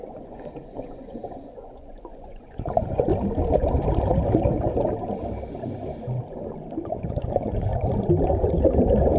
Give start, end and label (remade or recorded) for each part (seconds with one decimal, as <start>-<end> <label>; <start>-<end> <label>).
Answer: 0.0-3.1 remade; 3.1-6.9 recorded; 6.9-7.7 remade; 7.7-9.2 recorded